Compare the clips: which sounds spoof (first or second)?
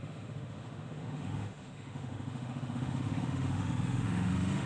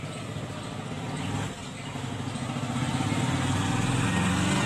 first